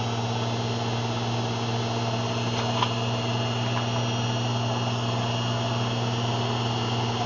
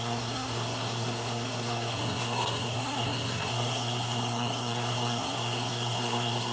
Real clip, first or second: first